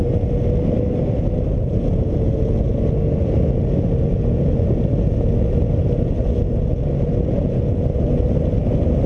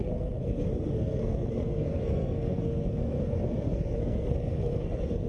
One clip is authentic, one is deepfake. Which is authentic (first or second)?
first